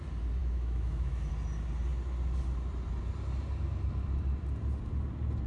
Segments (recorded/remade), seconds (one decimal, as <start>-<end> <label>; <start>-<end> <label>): 0.0-0.4 recorded; 0.4-1.3 remade; 1.3-5.5 recorded